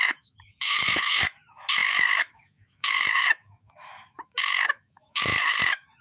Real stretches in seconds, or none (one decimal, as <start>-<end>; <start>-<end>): none